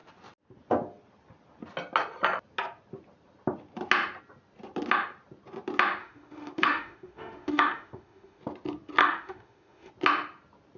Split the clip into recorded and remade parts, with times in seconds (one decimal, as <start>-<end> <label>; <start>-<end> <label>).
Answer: 0.0-6.0 recorded; 6.0-8.4 remade; 8.4-9.0 recorded; 9.0-9.9 remade; 9.9-10.8 recorded